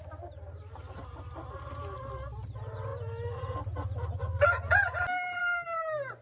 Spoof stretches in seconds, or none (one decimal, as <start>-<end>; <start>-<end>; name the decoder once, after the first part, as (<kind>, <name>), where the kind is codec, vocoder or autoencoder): none